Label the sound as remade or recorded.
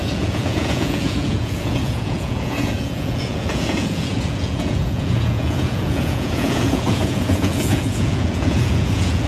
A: remade